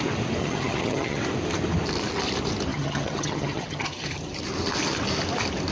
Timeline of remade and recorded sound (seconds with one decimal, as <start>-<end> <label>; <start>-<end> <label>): 0.0-0.4 recorded; 0.4-1.2 remade; 1.2-2.7 recorded; 2.7-4.1 remade; 4.1-5.7 recorded